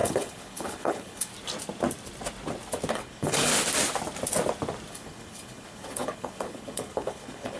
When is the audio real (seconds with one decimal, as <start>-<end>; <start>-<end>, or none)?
1.3-2.9; 3.5-4.9